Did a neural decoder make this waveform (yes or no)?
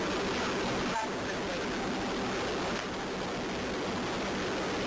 no